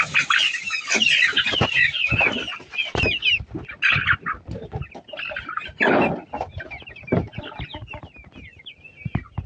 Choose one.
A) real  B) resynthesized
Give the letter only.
A